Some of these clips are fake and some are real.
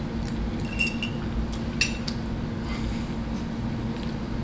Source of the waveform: real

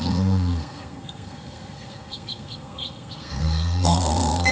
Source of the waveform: fake